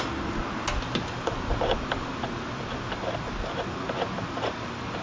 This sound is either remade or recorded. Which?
recorded